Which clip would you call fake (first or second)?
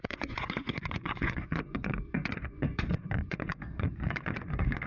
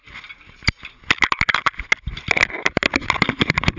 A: first